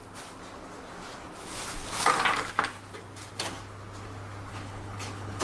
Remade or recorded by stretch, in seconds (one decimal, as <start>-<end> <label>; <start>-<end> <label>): 0.0-4.5 recorded; 4.5-5.4 remade